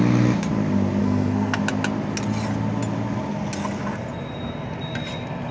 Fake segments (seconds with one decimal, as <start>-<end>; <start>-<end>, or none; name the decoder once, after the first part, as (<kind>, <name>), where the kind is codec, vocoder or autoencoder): 1.0-1.6 (codec, SNAC)